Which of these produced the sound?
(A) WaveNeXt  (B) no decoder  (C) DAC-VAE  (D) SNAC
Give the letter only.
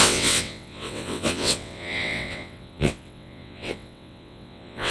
A